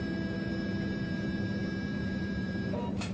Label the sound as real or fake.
fake